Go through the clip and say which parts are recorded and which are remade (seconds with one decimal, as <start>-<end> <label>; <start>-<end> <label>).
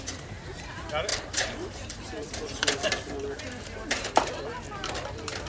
0.0-1.1 recorded; 1.1-4.4 remade; 4.4-5.5 recorded